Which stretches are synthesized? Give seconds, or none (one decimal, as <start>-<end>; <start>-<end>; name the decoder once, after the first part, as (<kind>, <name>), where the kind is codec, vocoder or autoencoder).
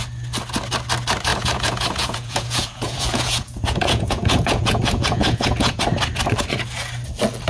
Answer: 1.3-5.8 (vocoder, Vocos)